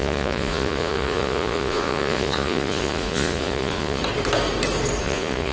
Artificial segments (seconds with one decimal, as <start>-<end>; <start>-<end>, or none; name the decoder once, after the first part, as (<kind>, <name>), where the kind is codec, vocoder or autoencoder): 0.0-4.0 (vocoder, Vocos); 5.0-5.5